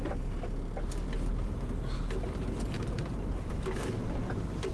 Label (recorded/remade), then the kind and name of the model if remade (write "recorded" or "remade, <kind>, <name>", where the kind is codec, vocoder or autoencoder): recorded